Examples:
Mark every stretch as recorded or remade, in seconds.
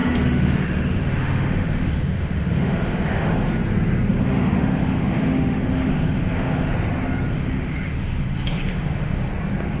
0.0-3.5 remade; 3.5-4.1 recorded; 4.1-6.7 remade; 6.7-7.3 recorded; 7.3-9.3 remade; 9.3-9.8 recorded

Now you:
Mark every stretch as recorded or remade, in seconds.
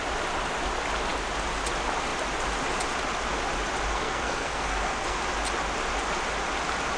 0.0-3.9 recorded; 3.9-5.2 remade; 5.2-7.0 recorded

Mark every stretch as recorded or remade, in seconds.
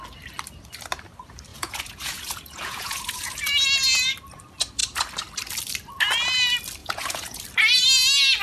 0.0-1.5 recorded; 1.5-3.4 remade; 3.4-6.8 recorded; 6.8-7.4 remade; 7.4-8.4 recorded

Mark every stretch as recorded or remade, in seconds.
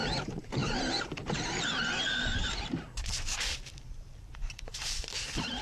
0.0-5.6 remade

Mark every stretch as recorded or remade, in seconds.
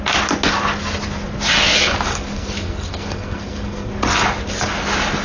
0.0-2.1 recorded; 2.1-3.9 remade; 3.9-5.2 recorded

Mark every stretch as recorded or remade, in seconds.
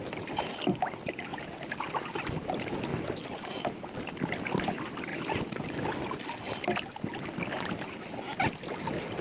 0.0-1.3 recorded; 1.3-2.0 remade; 2.0-9.2 recorded